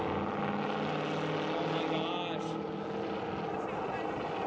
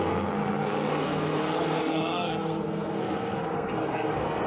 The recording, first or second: first